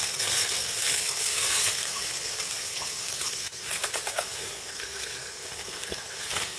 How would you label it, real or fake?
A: fake